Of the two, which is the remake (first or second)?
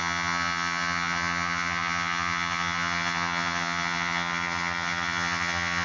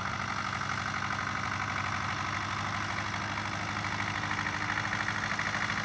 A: first